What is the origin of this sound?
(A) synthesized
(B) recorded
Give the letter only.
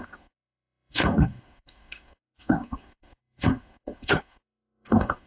A